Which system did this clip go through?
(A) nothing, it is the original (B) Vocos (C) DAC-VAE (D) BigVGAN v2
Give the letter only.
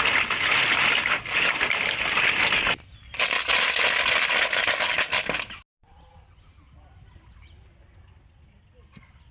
A